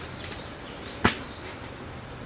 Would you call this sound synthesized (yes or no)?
no